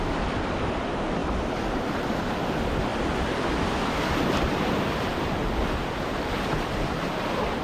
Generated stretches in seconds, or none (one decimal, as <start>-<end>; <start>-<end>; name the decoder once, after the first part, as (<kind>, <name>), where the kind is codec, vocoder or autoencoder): 1.2-2.3 (vocoder, BigVGAN v2)